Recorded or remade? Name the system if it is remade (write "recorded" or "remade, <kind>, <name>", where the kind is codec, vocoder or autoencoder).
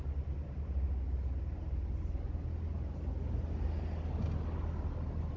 recorded